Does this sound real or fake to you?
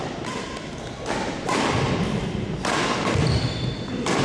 real